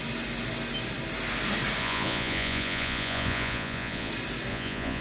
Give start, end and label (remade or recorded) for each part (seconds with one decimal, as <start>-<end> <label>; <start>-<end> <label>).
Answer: 0.0-1.8 recorded; 1.8-4.1 remade; 4.1-4.5 recorded; 4.5-5.0 remade